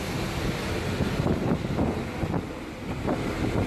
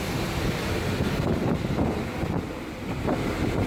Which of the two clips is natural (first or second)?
first